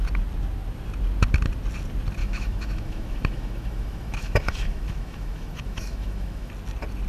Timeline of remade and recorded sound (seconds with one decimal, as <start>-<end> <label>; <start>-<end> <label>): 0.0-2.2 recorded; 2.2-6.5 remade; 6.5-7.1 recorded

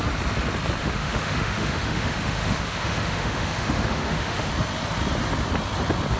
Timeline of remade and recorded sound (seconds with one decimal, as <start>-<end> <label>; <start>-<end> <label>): 0.0-0.8 recorded; 0.8-4.5 remade; 4.5-6.2 recorded

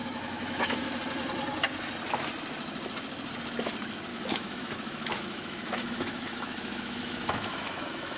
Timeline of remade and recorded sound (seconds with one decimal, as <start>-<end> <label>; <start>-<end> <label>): 0.0-1.0 remade; 1.0-4.1 recorded; 4.1-8.2 remade

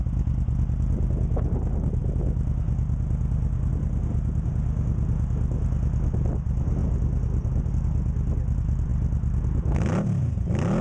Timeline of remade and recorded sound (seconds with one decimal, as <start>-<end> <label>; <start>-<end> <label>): 0.0-10.8 recorded